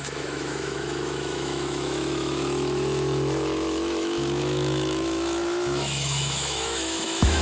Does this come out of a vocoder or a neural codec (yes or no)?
yes